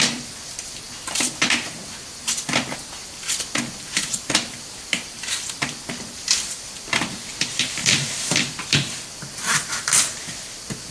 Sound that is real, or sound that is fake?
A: fake